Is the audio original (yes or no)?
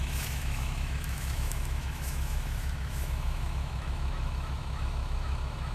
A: no